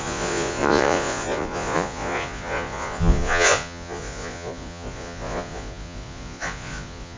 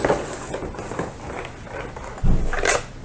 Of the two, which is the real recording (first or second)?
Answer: second